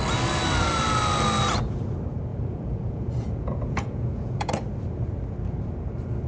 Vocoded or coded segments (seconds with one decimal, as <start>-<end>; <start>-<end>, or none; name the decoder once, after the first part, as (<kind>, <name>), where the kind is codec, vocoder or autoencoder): 2.3-4.5 (vocoder, Vocos)